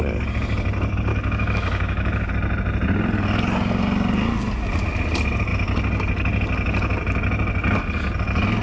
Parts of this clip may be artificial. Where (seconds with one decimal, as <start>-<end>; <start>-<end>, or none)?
1.1-2.3